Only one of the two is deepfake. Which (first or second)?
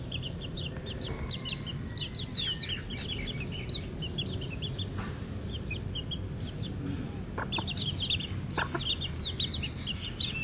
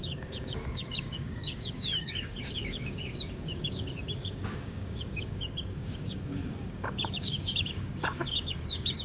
second